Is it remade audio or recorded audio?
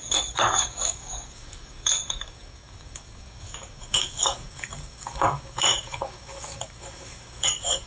remade